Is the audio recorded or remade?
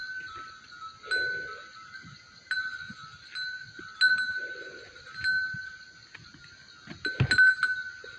recorded